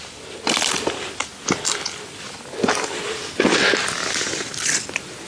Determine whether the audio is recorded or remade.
recorded